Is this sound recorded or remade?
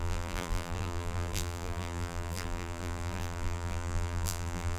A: remade